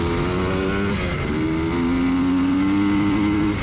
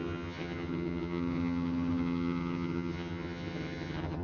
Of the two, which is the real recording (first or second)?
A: first